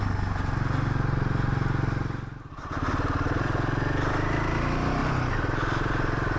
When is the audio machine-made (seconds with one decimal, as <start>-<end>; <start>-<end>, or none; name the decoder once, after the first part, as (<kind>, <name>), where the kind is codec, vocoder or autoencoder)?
none